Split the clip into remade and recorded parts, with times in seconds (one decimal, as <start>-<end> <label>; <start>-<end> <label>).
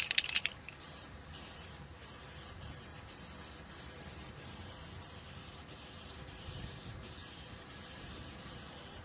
0.0-2.9 remade; 2.9-3.8 recorded; 3.8-9.0 remade